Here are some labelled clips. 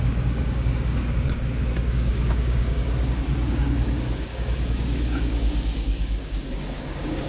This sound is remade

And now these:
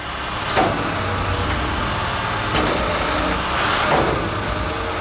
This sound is recorded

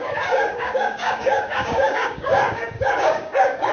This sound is remade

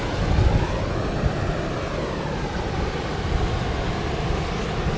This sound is recorded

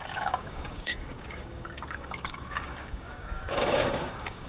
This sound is remade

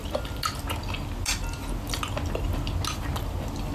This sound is recorded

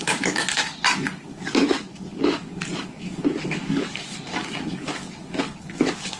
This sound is remade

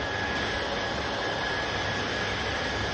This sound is recorded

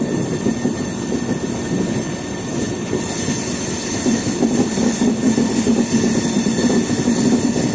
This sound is recorded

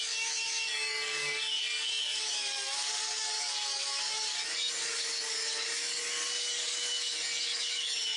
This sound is remade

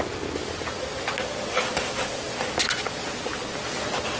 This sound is recorded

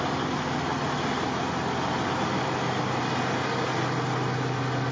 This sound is recorded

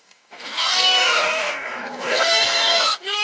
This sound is remade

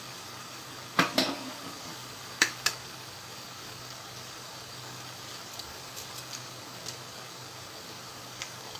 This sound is remade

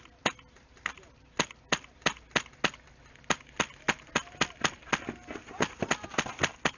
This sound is recorded